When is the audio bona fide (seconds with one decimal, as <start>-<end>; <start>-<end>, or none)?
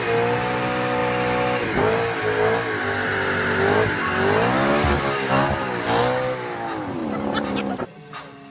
0.0-7.0; 7.6-8.5